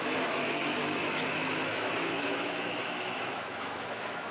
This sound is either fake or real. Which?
fake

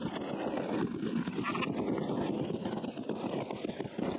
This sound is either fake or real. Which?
real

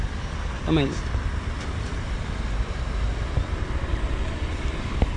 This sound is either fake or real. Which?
fake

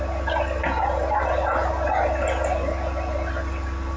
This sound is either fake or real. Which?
real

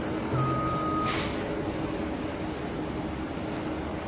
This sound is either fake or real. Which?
real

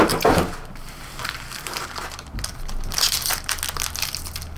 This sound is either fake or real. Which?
real